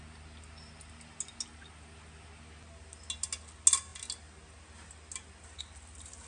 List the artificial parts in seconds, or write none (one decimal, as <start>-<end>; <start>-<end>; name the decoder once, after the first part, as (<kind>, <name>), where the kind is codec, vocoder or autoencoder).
none